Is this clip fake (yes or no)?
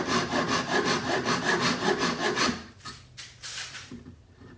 yes